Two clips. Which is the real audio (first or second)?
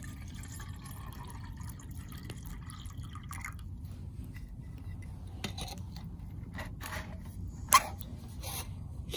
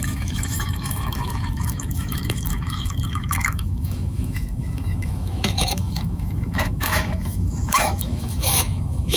first